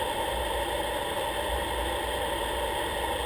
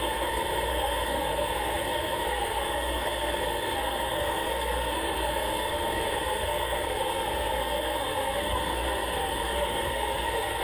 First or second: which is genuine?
first